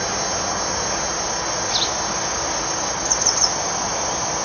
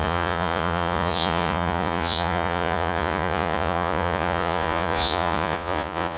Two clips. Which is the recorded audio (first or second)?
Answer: first